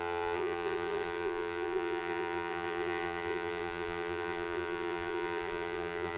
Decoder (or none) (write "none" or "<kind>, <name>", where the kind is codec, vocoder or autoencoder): vocoder, BigVGAN v2